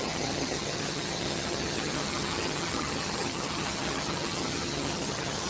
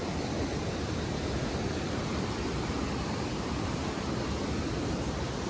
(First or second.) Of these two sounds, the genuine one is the second